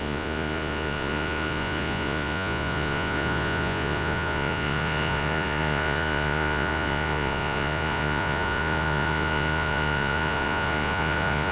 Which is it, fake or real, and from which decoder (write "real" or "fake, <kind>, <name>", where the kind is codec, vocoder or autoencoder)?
fake, vocoder, Vocos